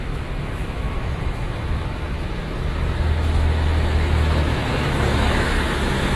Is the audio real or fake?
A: fake